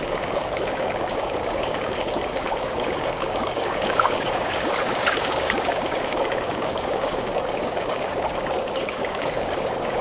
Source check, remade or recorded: remade